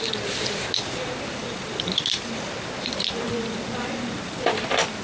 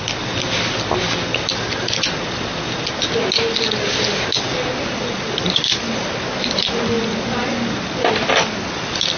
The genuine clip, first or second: second